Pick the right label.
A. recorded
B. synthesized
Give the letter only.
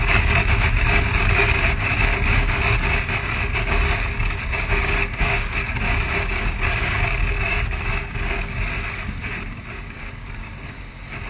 B